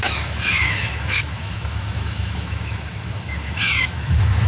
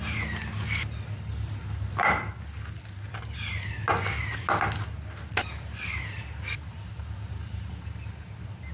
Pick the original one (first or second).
second